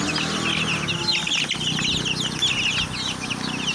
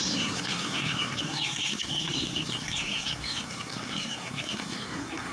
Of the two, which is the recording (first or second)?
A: first